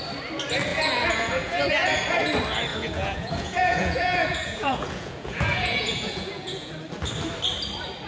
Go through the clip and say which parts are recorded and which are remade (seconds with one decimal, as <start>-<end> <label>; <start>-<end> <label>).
0.0-0.7 recorded; 0.7-1.7 remade; 1.7-2.7 recorded; 2.7-6.7 remade; 6.7-8.1 recorded